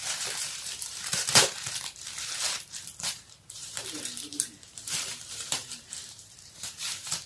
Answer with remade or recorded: remade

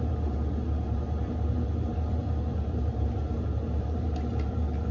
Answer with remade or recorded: remade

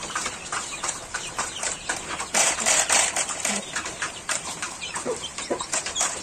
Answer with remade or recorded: remade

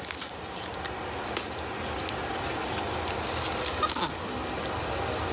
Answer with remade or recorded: recorded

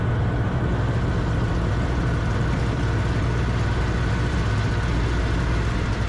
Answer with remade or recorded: recorded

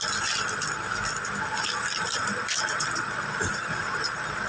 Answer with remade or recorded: remade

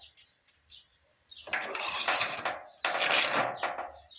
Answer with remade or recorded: recorded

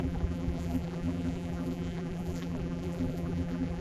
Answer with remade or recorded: remade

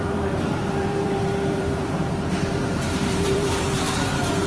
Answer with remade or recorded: remade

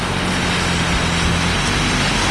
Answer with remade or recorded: recorded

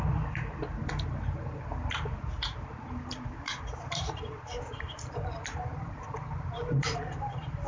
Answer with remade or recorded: remade